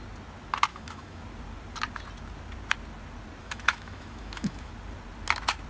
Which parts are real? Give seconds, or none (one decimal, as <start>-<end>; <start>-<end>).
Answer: 0.0-0.7; 1.2-3.4; 4.7-5.7